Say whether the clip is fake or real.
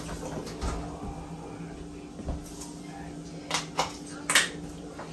real